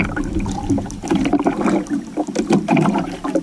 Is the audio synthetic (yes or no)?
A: yes